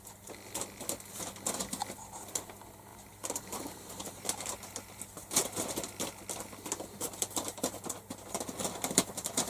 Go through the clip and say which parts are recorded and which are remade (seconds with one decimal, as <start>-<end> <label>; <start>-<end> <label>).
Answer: 0.0-2.9 recorded; 2.9-5.8 remade; 5.8-9.5 recorded